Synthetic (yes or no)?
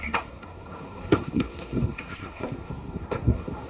yes